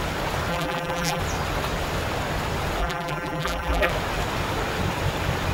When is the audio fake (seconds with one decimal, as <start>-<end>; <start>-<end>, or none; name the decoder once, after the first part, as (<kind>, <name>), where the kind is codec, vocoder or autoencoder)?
0.5-1.2 (vocoder, BigVGAN v2); 2.8-3.9